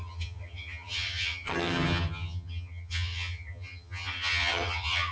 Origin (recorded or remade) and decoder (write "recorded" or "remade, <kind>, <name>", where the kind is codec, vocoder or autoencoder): remade, vocoder, HiFi-GAN